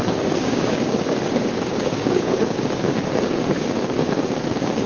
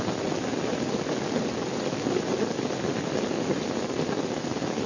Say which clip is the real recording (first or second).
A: second